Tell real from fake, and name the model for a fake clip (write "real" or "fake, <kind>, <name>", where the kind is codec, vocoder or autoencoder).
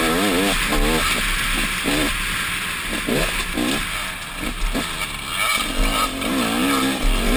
real